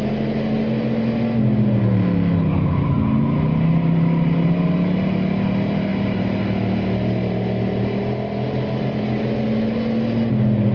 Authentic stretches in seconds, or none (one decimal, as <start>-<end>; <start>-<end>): 0.0-10.7